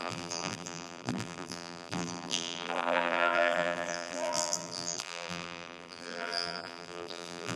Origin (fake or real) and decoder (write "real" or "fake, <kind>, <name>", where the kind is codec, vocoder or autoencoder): fake, vocoder, BigVGAN v2